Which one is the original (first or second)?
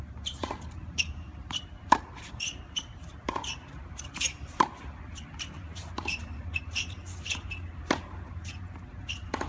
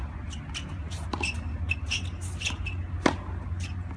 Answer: second